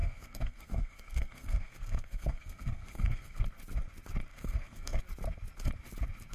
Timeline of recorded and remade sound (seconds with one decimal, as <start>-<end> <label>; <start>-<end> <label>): 0.0-3.4 remade; 3.4-4.3 recorded; 4.3-5.0 remade; 5.0-6.3 recorded